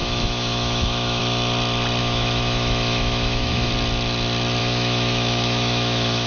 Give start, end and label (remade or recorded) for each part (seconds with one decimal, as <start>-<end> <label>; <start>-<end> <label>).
0.0-1.2 remade; 1.2-2.0 recorded; 2.0-3.7 remade; 3.7-4.6 recorded; 4.6-6.3 remade

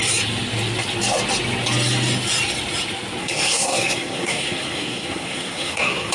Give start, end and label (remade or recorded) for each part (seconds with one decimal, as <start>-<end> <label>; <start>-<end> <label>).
0.0-3.2 recorded; 3.2-6.1 remade